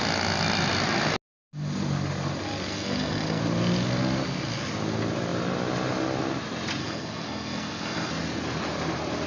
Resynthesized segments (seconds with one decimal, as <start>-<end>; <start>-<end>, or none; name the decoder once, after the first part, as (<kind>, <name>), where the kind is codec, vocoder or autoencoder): 2.7-3.4 (codec, SNAC); 6.8-8.1